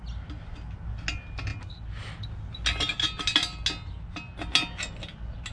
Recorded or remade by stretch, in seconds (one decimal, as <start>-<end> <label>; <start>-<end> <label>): 0.0-5.5 recorded